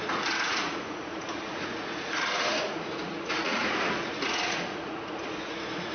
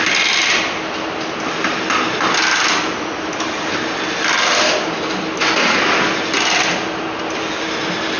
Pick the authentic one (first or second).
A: second